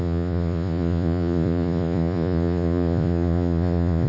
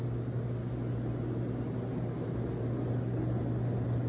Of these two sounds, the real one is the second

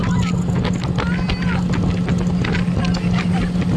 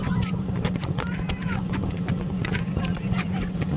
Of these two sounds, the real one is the first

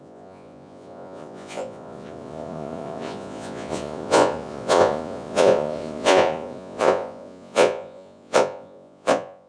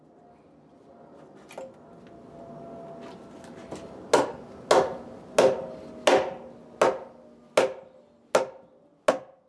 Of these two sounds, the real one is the second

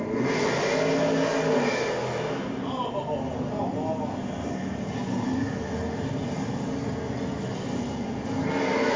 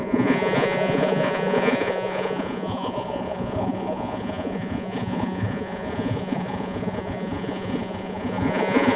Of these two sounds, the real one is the first